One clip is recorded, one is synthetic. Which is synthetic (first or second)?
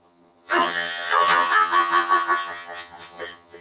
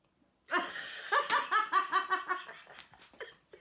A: first